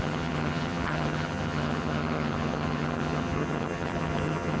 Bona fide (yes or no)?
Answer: no